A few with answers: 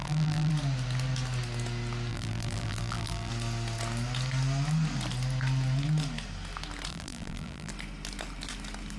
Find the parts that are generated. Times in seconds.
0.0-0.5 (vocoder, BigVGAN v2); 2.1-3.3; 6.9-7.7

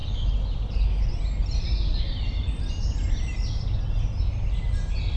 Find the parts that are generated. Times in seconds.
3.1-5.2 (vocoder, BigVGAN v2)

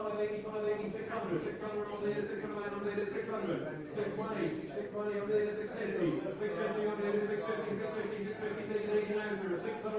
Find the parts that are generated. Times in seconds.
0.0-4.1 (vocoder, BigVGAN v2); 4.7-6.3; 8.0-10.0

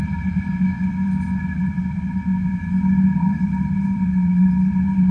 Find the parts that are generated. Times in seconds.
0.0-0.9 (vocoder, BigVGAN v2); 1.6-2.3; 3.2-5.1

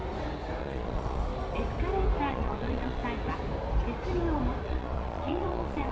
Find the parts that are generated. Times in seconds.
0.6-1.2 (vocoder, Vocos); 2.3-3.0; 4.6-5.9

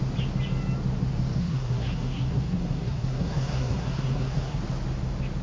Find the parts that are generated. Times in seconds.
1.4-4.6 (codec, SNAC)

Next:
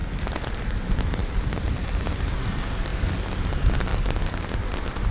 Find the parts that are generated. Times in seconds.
3.9-4.4 (codec, DAC)

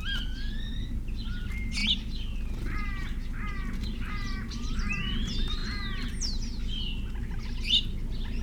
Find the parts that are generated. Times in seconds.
none